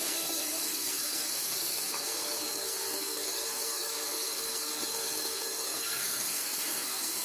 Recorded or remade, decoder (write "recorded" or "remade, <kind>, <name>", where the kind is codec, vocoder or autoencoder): remade, codec, SNAC